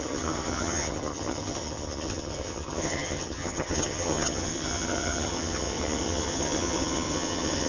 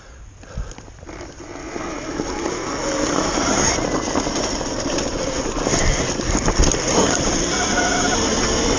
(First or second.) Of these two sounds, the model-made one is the first